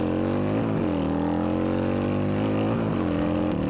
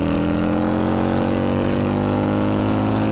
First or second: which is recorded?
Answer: first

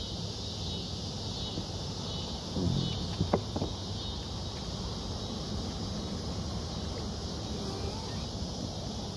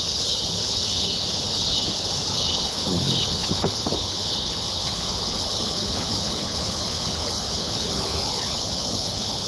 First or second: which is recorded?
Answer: first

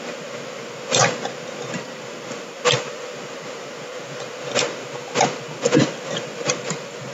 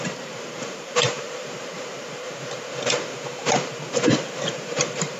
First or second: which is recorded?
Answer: first